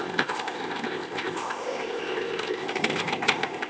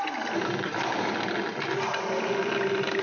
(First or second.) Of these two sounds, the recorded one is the second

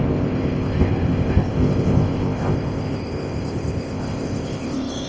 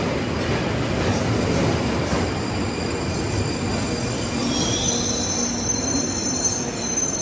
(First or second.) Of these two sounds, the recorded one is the second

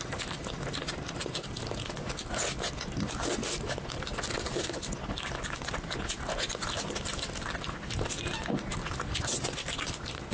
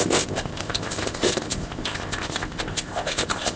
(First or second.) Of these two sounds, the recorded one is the first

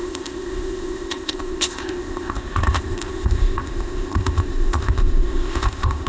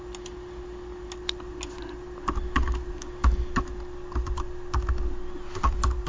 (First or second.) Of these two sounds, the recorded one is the second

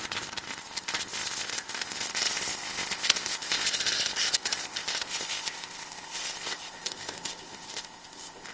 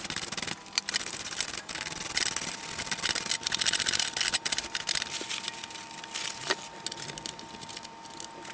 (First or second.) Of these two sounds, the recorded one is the second